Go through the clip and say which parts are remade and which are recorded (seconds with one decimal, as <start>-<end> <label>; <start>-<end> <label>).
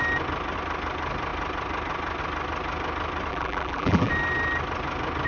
0.0-3.3 recorded; 3.3-4.1 remade; 4.1-5.3 recorded